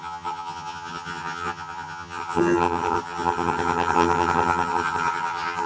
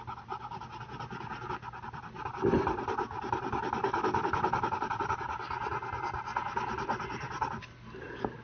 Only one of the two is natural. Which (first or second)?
second